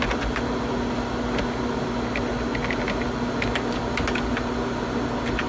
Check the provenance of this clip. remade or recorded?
recorded